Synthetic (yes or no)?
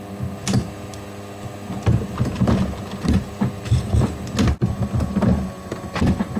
no